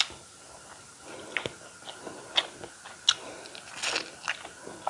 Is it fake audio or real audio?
real